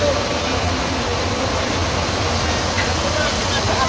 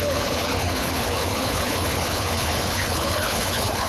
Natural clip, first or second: first